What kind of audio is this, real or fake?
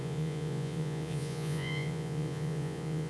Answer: fake